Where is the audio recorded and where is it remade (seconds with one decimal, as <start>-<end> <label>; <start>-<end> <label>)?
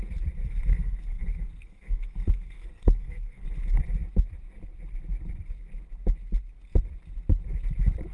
0.0-0.4 recorded; 0.4-3.4 remade; 3.4-8.1 recorded